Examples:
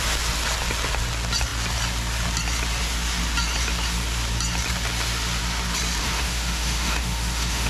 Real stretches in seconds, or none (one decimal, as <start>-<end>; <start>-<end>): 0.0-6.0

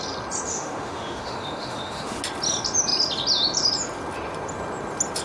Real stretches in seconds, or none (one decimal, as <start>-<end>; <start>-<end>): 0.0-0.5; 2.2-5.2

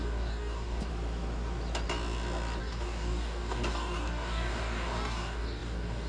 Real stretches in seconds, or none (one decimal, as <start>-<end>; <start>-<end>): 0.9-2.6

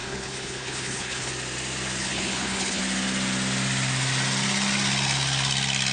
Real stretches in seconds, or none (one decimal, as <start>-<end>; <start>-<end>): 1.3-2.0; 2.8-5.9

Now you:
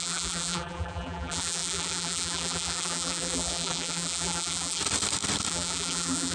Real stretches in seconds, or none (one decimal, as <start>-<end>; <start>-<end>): 4.8-5.5

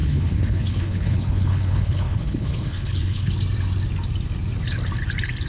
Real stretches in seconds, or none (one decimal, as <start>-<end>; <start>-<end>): 3.3-5.5